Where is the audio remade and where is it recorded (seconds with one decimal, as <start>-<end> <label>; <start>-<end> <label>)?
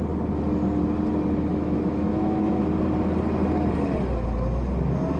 0.0-1.5 recorded; 1.5-2.7 remade; 2.7-5.2 recorded